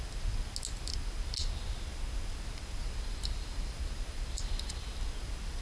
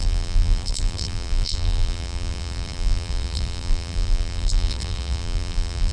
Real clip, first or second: first